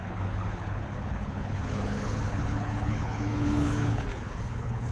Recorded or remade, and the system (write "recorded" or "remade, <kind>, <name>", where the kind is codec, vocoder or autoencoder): remade, codec, HILCodec